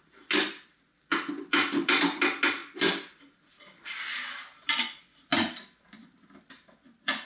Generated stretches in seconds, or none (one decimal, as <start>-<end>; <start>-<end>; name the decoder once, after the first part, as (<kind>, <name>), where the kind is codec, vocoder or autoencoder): none